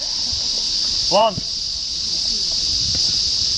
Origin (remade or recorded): remade